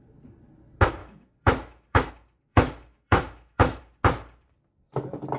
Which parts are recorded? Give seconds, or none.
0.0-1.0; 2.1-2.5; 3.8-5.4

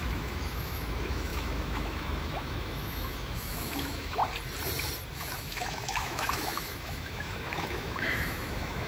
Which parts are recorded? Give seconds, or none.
4.2-5.1

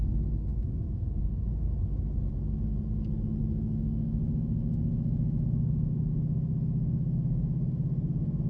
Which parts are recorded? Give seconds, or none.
0.0-0.5; 1.2-3.4; 7.7-8.5

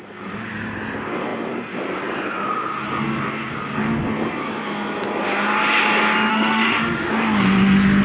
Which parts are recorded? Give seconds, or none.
0.0-6.3; 7.1-8.0

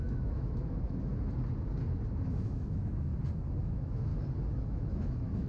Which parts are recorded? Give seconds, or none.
1.1-2.1; 3.1-3.6; 4.1-4.6

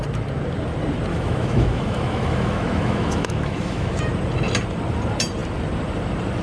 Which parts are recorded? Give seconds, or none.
0.0-1.1; 4.0-6.4